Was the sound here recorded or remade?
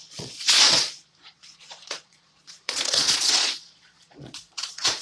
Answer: remade